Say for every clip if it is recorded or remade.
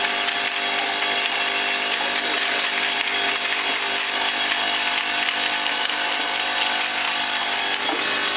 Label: recorded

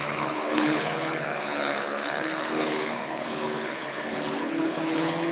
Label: remade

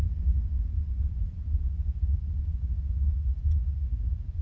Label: remade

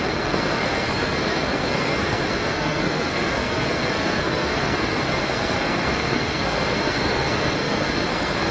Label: remade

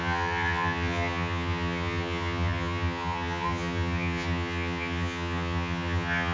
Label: remade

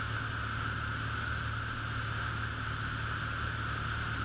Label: recorded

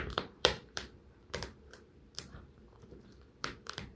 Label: remade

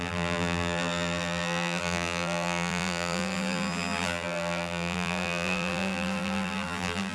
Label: remade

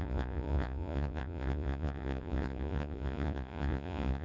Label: remade